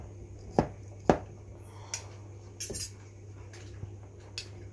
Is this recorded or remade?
recorded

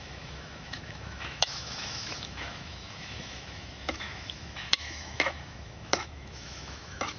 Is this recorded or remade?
remade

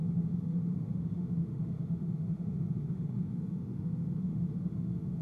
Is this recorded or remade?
remade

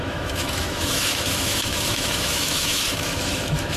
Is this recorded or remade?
remade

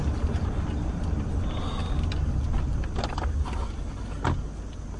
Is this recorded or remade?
recorded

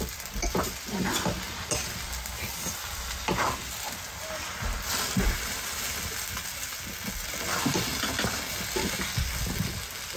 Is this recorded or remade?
recorded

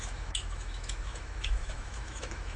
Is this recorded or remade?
remade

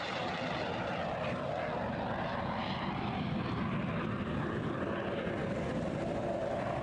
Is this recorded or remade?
recorded